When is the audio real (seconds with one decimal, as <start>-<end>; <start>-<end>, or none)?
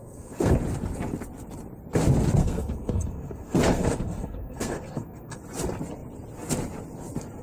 0.5-2.4; 5.4-7.4